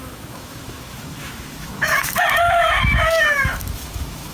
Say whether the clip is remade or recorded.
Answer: remade